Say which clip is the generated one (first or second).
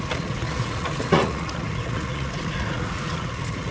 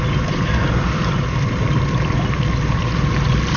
first